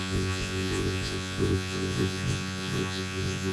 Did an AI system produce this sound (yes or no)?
yes